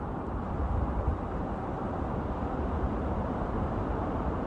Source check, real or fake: fake